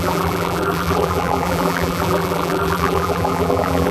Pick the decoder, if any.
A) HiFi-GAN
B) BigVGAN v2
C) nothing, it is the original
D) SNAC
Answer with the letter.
B